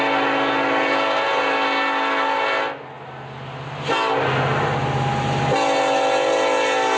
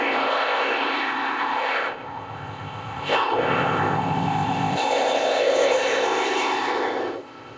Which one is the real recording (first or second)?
first